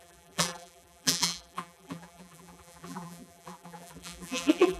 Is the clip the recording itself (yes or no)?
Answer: no